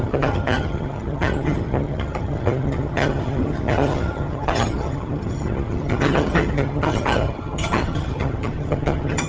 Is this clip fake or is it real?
fake